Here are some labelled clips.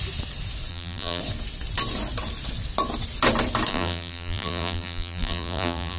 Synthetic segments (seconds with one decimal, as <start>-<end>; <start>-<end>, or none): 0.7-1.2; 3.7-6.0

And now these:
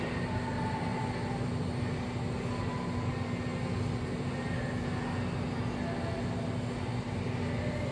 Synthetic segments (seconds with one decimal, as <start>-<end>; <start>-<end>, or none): none

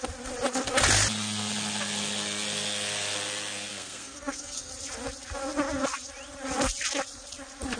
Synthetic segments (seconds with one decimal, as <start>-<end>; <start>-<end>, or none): 3.7-4.7